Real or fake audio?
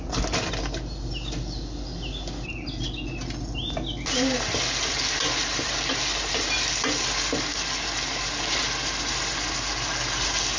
real